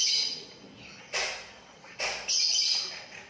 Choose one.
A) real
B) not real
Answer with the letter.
A